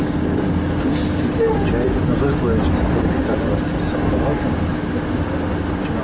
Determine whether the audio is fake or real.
real